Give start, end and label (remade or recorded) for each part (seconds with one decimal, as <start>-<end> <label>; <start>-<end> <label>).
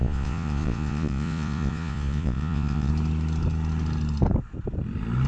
0.0-2.9 remade; 2.9-5.3 recorded